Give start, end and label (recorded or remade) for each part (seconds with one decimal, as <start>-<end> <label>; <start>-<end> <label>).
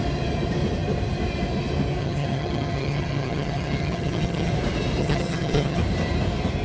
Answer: 0.0-2.0 recorded; 2.0-4.5 remade; 4.5-5.0 recorded; 5.0-5.8 remade; 5.8-6.6 recorded